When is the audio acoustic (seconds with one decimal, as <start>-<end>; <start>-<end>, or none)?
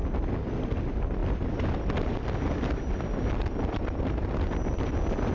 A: 0.0-5.3